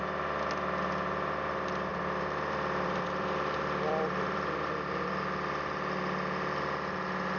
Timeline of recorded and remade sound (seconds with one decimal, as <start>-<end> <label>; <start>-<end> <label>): 0.0-1.9 recorded; 1.9-5.2 remade; 5.2-7.4 recorded